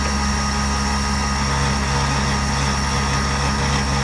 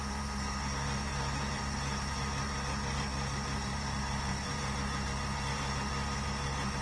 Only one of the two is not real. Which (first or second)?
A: second